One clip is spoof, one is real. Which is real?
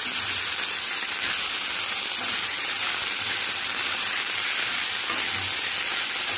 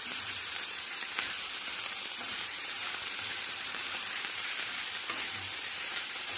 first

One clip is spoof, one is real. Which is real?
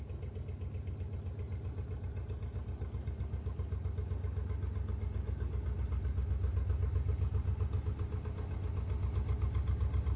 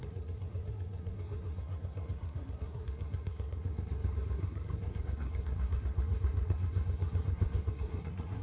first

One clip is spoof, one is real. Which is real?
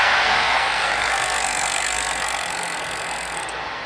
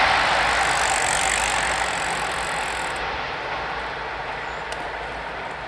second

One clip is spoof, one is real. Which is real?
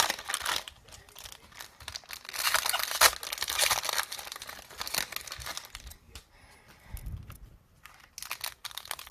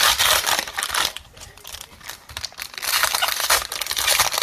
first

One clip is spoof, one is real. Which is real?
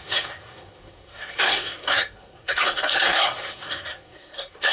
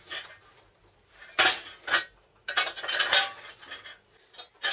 second